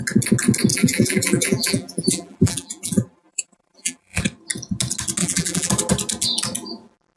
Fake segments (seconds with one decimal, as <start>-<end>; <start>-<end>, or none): 0.7-4.2; 5.2-5.7